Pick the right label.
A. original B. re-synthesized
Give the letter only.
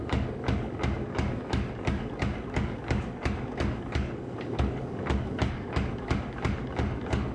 B